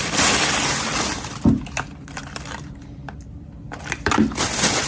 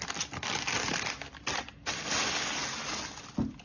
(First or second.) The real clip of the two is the second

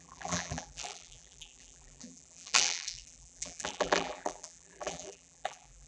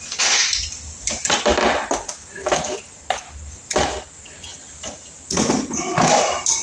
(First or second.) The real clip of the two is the second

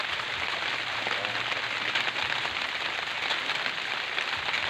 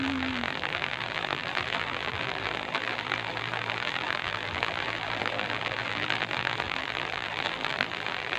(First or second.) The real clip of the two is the first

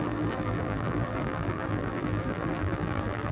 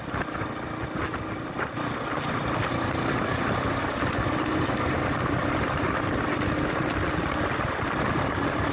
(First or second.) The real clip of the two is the second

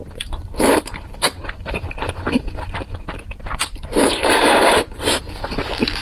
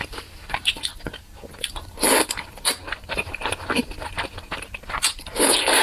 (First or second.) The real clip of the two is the second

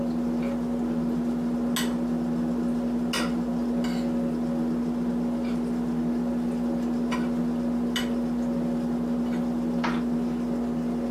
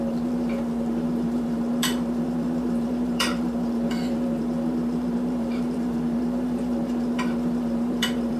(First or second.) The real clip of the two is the first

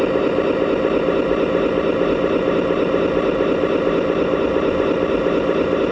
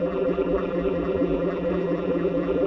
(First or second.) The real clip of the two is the first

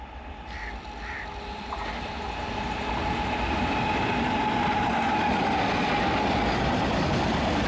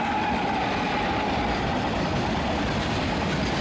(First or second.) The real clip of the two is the first